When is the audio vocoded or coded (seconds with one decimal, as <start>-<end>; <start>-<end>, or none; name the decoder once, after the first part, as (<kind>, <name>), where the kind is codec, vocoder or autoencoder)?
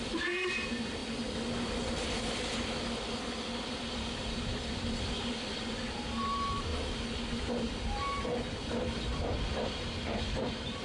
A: 0.0-1.0 (vocoder, BigVGAN v2); 3.6-6.7; 7.5-8.6; 9.5-10.8